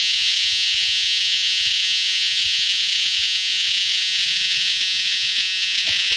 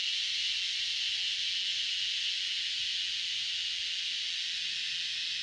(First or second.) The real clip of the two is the second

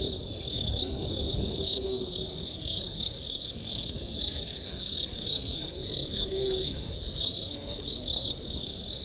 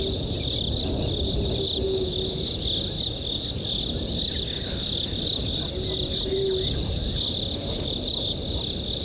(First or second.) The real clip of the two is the second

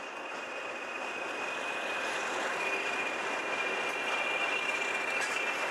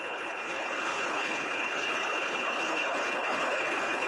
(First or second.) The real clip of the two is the first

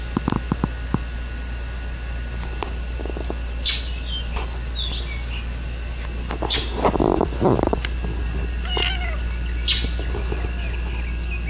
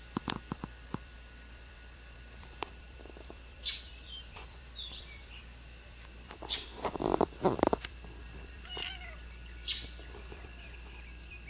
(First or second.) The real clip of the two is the first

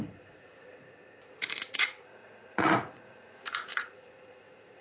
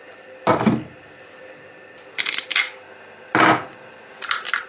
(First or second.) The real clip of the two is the second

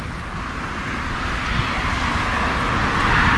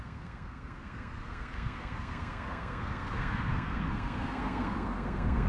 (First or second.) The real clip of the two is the first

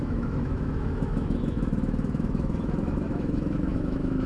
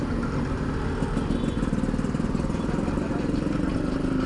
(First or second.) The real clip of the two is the second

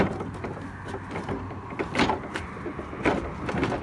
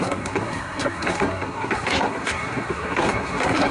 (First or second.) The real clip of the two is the first